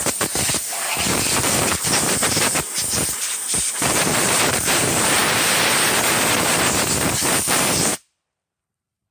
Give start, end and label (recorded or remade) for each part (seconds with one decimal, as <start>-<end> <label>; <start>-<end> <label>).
0.0-5.2 remade; 5.2-7.1 recorded; 7.1-7.9 remade; 7.9-8.6 recorded; 8.6-9.1 remade